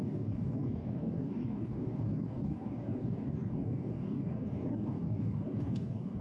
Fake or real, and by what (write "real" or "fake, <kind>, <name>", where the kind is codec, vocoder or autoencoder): fake, codec, DAC